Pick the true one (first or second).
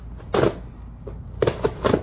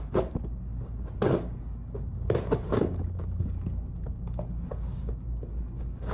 first